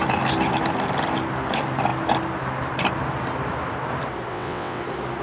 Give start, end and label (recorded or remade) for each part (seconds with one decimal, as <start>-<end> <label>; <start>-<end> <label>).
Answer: 0.0-4.3 recorded; 4.3-4.8 remade; 4.8-5.2 recorded